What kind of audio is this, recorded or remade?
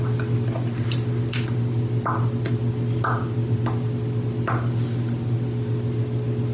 recorded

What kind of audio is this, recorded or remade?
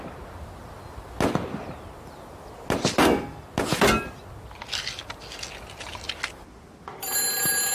recorded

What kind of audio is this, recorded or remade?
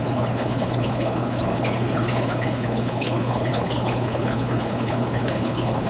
remade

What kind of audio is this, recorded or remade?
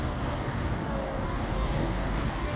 remade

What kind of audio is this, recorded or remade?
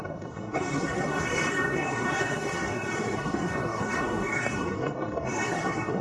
remade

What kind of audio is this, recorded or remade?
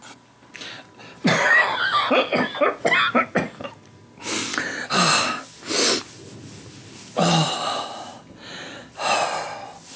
recorded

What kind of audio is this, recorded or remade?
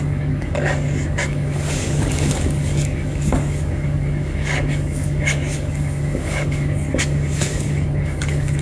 remade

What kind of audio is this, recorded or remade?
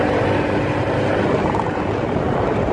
recorded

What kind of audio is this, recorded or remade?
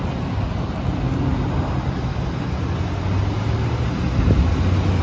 recorded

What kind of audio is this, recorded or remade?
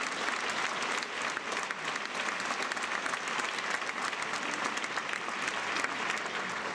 recorded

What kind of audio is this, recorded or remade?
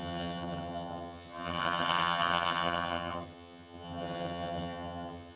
remade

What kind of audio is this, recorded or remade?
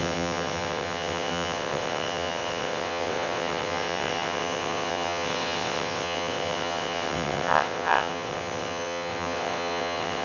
remade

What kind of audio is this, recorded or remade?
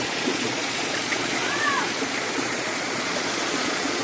remade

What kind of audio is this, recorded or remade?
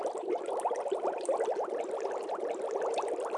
recorded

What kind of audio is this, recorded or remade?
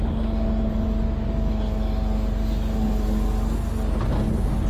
recorded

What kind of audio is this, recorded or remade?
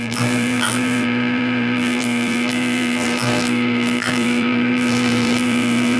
remade